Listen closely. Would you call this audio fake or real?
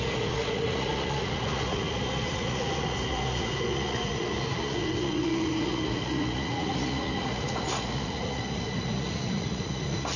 fake